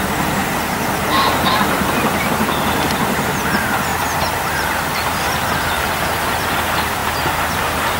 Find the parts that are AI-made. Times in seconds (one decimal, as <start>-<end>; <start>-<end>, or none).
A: 0.4-3.4; 3.9-4.7